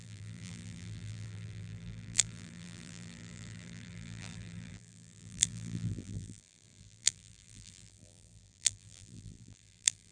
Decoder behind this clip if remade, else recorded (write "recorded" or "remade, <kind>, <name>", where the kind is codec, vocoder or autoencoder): remade, vocoder, BigVGAN v2